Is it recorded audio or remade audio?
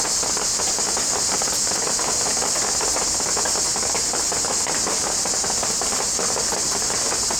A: recorded